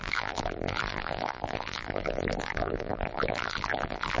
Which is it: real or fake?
fake